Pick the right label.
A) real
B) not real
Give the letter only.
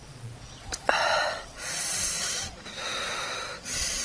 B